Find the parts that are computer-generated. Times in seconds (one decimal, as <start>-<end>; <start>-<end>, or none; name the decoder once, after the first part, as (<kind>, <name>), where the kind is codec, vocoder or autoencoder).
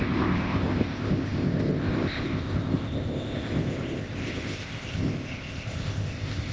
0.0-6.5 (codec, ZipCodec)